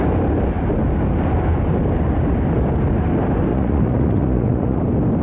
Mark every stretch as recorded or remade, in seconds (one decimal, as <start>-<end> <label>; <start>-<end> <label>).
0.0-3.5 recorded; 3.5-4.8 remade; 4.8-5.2 recorded